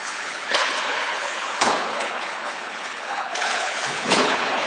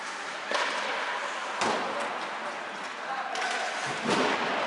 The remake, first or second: first